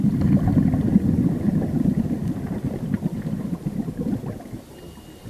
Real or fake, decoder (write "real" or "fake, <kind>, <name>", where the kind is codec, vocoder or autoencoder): real